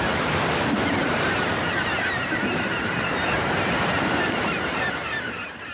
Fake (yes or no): yes